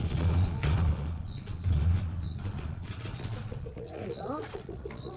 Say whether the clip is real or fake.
fake